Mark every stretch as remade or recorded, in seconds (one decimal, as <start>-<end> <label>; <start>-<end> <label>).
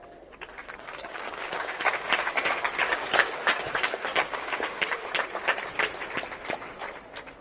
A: 0.0-0.6 recorded; 0.6-5.0 remade; 5.0-7.4 recorded